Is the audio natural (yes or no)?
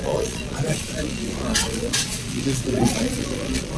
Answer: no